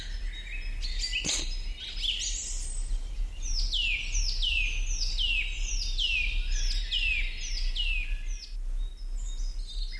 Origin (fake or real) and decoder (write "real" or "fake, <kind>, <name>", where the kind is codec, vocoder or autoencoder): real